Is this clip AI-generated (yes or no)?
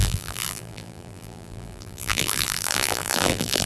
yes